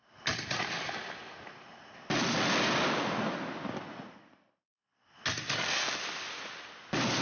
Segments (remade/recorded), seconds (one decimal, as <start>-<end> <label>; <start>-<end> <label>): 0.0-7.2 recorded